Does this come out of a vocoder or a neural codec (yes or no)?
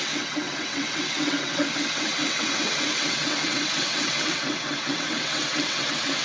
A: yes